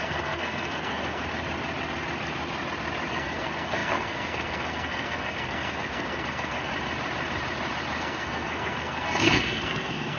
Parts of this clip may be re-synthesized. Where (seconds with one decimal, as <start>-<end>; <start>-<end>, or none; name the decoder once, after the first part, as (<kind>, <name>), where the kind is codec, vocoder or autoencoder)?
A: 0.0-1.2 (codec, SNAC); 3.1-6.7; 8.0-10.2